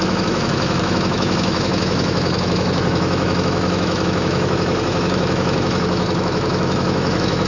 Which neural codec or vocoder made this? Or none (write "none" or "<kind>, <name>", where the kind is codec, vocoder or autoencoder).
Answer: autoencoder, DAC-VAE